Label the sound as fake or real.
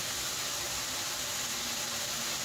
real